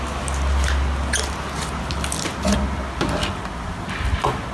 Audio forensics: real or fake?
real